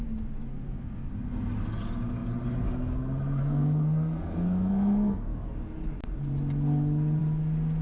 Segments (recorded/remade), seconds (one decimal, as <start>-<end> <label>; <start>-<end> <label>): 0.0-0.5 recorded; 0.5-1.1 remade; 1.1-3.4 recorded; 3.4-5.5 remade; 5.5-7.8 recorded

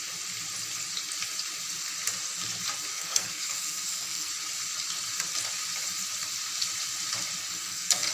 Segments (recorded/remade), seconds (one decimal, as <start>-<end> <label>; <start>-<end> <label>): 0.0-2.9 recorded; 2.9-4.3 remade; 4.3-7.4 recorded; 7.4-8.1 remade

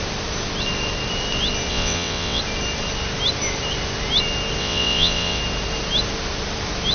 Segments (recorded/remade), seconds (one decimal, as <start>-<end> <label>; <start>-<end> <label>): 0.0-1.7 recorded; 1.7-2.4 remade; 2.4-4.6 recorded; 4.6-5.4 remade; 5.4-6.9 recorded